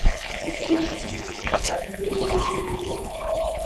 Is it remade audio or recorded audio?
remade